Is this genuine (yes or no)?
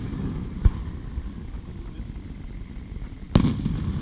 yes